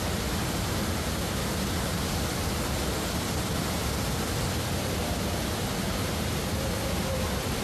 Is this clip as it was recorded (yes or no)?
yes